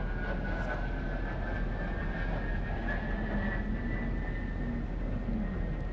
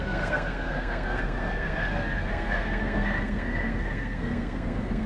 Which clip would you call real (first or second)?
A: first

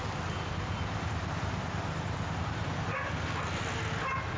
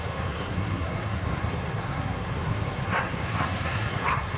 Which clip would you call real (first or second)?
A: first